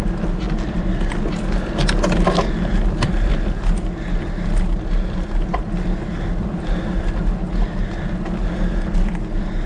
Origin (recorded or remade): recorded